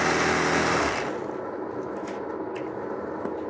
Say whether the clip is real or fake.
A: real